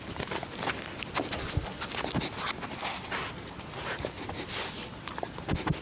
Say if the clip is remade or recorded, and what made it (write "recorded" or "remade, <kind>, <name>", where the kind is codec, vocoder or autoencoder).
recorded